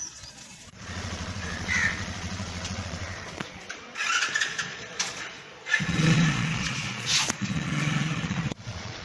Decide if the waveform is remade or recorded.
remade